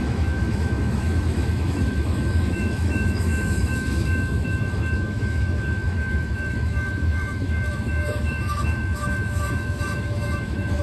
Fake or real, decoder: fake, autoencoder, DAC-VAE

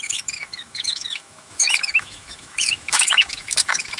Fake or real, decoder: fake, autoencoder, DAC-VAE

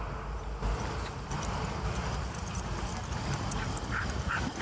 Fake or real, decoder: real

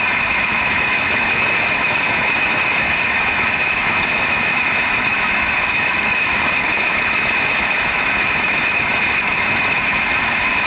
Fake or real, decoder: fake, autoencoder, DAC-VAE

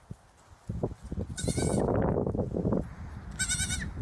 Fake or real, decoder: real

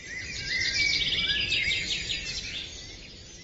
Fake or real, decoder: real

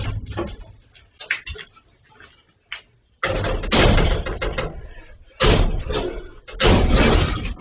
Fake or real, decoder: real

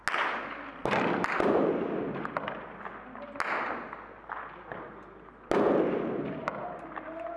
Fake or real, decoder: real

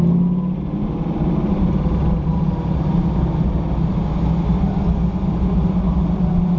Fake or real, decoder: real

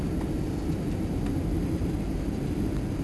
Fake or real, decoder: real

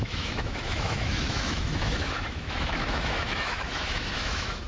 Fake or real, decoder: fake, autoencoder, DAC-VAE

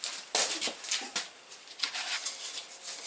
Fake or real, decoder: real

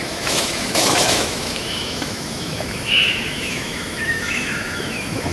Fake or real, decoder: fake, autoencoder, DAC-VAE